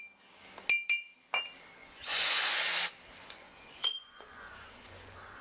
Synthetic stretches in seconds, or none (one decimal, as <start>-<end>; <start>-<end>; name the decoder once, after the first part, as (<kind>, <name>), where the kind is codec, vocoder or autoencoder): 1.8-2.6 (vocoder, Vocos); 3.2-5.4